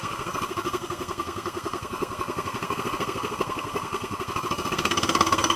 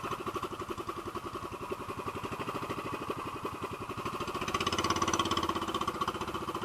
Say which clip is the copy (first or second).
first